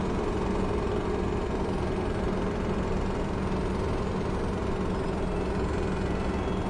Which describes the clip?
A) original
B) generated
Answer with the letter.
A